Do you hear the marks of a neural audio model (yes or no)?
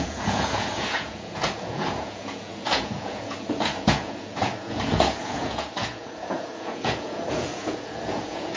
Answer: yes